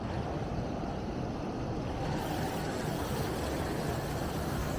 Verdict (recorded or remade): recorded